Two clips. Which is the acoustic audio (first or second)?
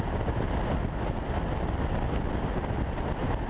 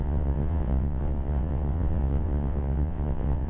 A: first